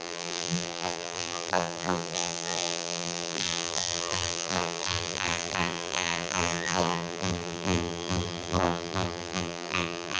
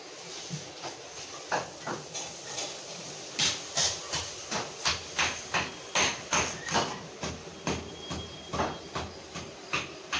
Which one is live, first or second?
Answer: second